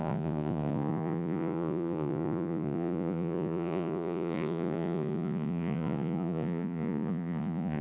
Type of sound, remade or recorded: remade